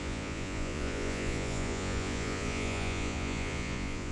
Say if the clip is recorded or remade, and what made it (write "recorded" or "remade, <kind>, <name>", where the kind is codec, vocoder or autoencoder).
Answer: remade, vocoder, Vocos